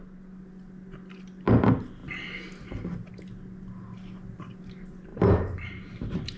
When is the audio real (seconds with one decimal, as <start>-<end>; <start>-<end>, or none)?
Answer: 0.0-5.1; 5.9-6.4